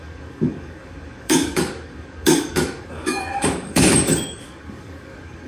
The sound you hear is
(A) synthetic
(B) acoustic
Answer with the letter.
A